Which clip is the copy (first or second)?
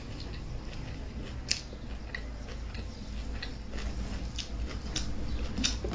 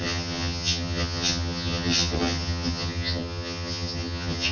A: second